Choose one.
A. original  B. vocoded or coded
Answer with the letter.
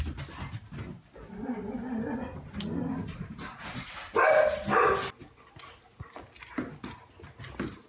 A